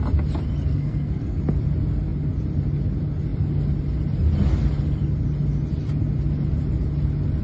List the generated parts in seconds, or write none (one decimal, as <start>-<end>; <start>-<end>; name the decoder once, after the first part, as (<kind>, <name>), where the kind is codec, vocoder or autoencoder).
0.7-1.4 (codec, SNAC)